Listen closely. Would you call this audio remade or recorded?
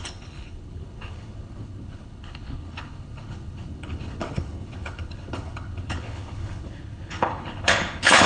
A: remade